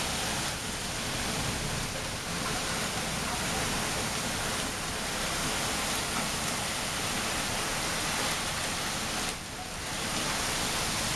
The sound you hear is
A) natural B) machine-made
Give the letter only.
A